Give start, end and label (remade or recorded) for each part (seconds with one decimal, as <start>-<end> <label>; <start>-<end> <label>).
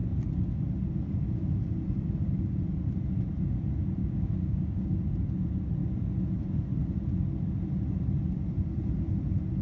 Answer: 0.0-4.0 recorded; 4.0-5.0 remade; 5.0-9.6 recorded